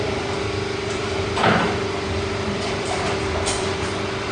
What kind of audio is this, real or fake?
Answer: fake